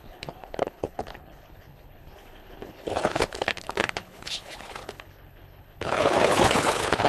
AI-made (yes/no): yes